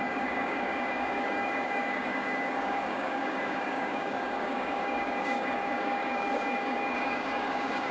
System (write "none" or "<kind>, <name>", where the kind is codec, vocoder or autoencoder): codec, DAC